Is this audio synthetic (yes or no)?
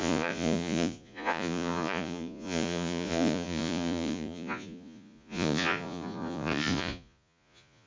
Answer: yes